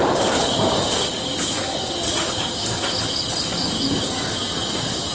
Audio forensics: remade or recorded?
recorded